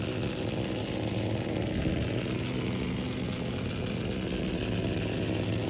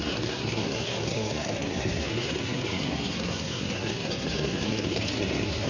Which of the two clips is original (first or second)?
first